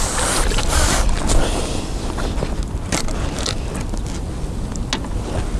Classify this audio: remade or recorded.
recorded